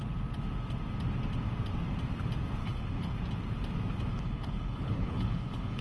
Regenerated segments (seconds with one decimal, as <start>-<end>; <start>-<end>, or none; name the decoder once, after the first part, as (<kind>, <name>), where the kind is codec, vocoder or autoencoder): 2.6-3.1 (codec, HILCodec); 4.1-5.8